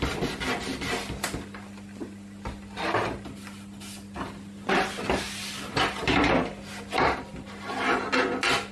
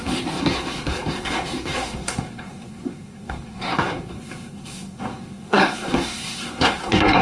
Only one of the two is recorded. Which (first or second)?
first